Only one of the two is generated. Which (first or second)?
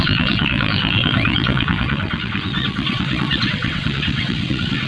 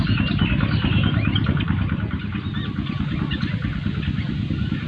first